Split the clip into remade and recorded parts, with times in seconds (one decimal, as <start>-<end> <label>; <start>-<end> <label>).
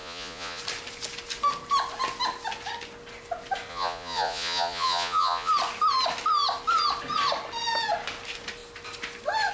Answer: 0.0-0.6 remade; 0.6-3.7 recorded; 3.7-5.5 remade; 5.5-9.5 recorded